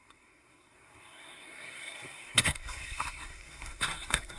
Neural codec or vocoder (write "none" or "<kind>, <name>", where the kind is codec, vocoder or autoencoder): codec, SNAC